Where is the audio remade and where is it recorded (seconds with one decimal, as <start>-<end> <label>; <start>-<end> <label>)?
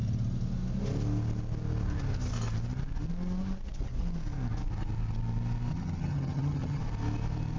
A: 0.0-5.7 recorded; 5.7-6.8 remade; 6.8-7.6 recorded